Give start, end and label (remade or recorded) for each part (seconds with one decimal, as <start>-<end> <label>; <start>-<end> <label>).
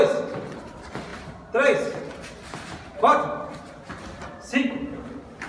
0.0-5.5 recorded